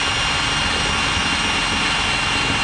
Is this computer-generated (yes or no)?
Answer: no